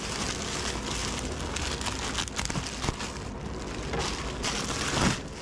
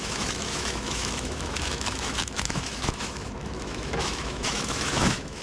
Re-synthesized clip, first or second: second